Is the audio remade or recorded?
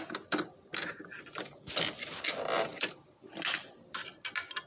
recorded